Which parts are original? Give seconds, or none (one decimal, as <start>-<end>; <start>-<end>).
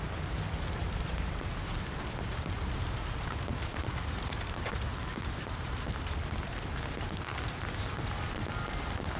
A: 0.0-0.8; 3.7-9.2